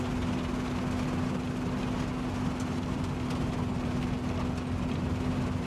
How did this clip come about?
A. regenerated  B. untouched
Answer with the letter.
B